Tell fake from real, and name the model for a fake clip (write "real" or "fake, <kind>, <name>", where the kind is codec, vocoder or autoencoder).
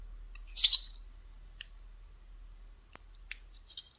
real